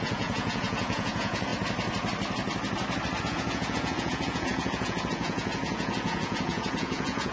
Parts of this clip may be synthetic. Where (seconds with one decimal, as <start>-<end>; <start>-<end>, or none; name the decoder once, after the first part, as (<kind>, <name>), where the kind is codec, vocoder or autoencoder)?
0.0-1.5 (vocoder, Vocos); 3.2-7.3